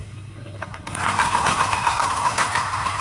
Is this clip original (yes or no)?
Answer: no